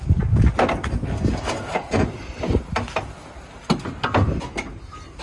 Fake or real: real